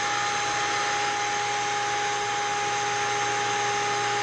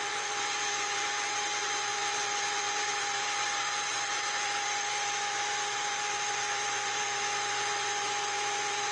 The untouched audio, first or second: first